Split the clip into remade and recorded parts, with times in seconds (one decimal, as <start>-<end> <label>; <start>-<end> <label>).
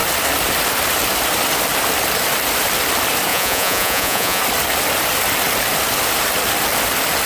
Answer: 0.0-3.3 recorded; 3.3-4.4 remade; 4.4-7.3 recorded